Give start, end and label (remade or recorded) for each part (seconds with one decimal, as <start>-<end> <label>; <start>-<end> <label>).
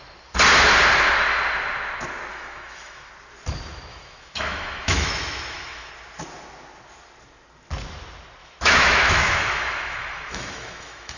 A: 0.0-2.3 recorded; 2.3-3.1 remade; 3.1-3.9 recorded; 3.9-5.9 remade; 5.9-8.4 recorded; 8.4-11.2 remade